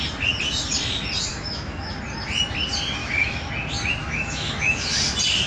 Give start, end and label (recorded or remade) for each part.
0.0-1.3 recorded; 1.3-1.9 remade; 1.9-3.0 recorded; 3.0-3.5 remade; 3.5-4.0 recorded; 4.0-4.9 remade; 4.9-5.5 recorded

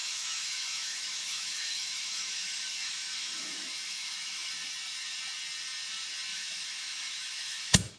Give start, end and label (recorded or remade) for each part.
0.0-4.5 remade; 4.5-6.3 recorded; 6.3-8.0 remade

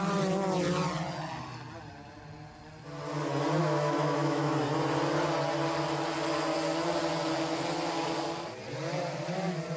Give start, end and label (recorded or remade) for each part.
0.0-3.6 recorded; 3.6-4.5 remade; 4.5-9.8 recorded

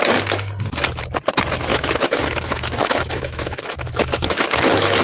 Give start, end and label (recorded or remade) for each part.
0.0-1.7 recorded; 1.7-5.0 remade

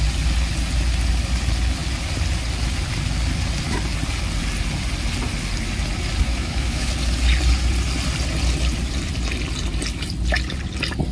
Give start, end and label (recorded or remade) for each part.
0.0-6.3 recorded; 6.3-6.9 remade; 6.9-11.1 recorded

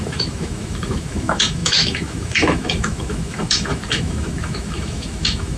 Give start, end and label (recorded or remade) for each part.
0.0-5.6 remade

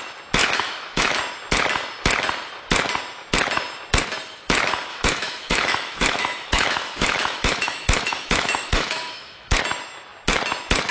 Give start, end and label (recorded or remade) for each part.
0.0-0.4 recorded; 0.4-1.2 remade; 1.2-4.9 recorded; 4.9-9.6 remade; 9.6-10.9 recorded

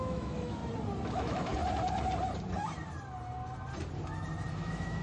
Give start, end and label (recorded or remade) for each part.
0.0-0.6 remade; 0.6-1.1 recorded; 1.1-1.5 remade; 1.5-4.5 recorded; 4.5-5.0 remade